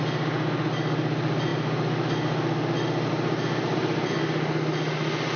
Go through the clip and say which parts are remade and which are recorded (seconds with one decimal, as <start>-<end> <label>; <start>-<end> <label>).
0.0-5.4 recorded